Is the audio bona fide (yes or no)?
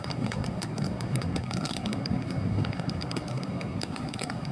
no